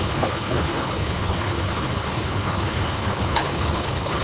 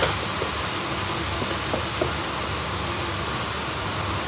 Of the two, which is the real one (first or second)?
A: second